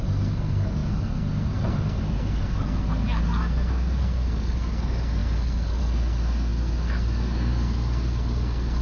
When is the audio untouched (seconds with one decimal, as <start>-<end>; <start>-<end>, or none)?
none